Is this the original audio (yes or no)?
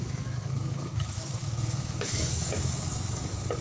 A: no